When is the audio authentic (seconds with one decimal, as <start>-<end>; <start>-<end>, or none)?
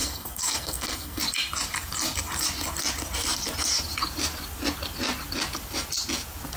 1.2-6.6